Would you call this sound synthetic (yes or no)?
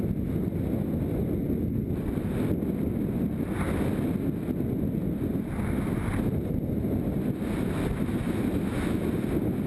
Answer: no